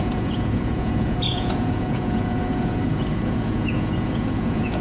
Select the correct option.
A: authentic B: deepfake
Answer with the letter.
B